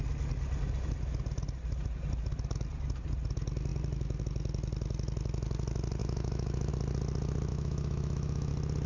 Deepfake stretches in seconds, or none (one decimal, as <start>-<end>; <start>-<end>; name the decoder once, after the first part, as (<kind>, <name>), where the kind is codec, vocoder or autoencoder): 6.0-6.7 (autoencoder, DAC-VAE); 7.5-8.5